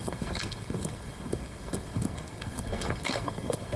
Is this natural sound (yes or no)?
no